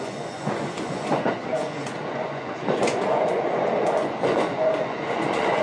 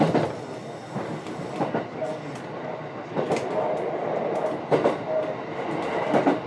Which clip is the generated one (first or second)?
first